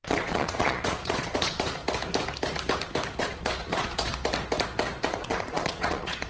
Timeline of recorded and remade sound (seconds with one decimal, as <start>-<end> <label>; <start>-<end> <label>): 0.0-1.8 remade; 1.8-3.2 recorded; 3.2-4.1 remade; 4.1-5.0 recorded; 5.0-6.3 remade